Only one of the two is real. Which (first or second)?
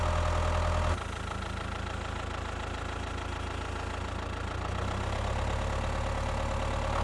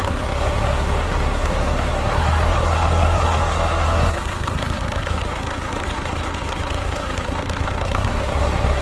first